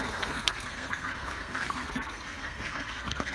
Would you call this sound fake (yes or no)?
yes